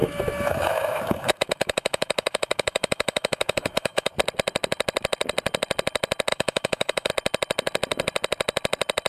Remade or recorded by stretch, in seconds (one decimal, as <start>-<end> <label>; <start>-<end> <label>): 0.0-4.1 remade; 4.1-6.3 recorded; 6.3-7.1 remade; 7.1-9.1 recorded